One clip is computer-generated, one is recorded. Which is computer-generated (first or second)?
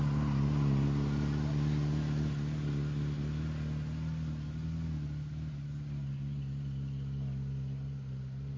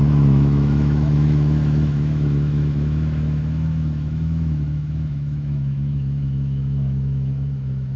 second